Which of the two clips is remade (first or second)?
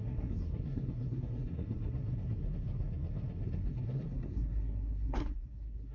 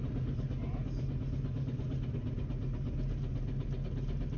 first